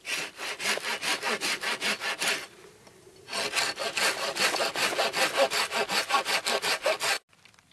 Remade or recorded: recorded